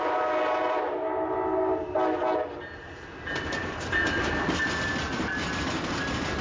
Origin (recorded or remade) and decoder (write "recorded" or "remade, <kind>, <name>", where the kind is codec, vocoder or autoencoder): recorded